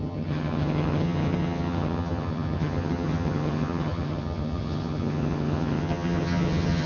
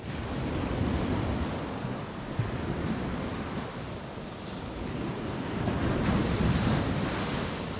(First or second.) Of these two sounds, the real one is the second